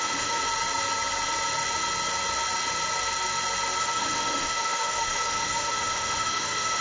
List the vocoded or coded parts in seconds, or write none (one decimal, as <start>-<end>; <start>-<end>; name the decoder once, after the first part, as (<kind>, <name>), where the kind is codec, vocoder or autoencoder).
0.0-0.4 (autoencoder, DAC-VAE); 3.8-6.8